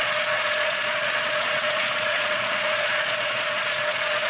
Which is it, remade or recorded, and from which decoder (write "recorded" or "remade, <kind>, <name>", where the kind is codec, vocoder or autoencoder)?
remade, vocoder, Vocos